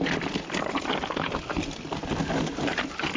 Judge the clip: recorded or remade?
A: recorded